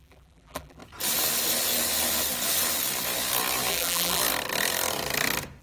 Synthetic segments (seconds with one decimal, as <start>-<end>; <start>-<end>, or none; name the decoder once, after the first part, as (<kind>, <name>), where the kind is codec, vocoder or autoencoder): 0.0-0.8 (vocoder, BigVGAN v2); 3.7-4.2